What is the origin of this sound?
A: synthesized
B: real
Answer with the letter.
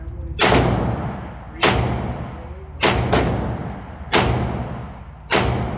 B